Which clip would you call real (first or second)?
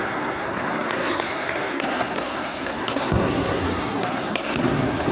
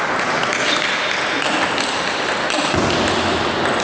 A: second